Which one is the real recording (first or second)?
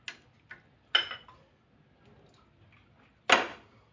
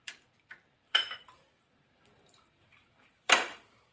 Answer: first